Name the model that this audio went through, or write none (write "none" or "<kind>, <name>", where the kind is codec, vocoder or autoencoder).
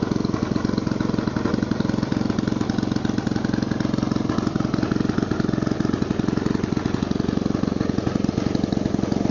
none